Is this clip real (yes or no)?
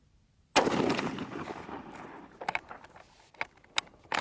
yes